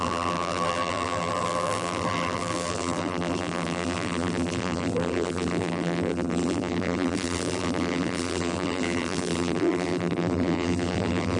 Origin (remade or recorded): remade